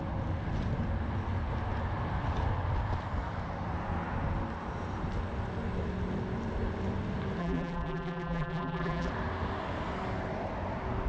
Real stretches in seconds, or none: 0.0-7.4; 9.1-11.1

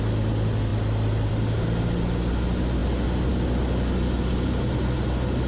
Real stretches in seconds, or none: 0.0-5.5

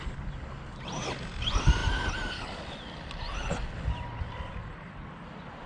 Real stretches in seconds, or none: 0.0-5.7

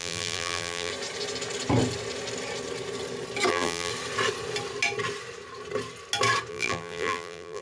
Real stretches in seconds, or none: 0.9-3.5; 3.9-6.5

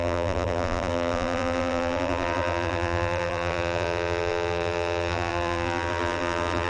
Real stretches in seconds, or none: none

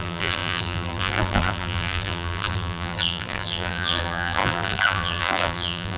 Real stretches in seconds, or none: none